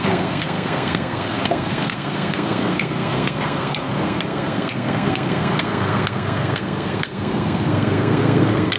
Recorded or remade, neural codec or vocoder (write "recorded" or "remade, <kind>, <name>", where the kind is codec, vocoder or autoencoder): remade, codec, SNAC